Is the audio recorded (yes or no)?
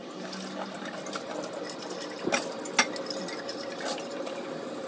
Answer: yes